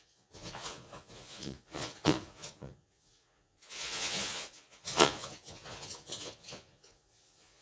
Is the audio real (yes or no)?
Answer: no